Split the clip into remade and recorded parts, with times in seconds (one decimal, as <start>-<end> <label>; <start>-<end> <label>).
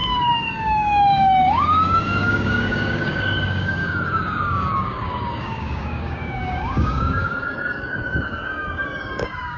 0.0-9.6 remade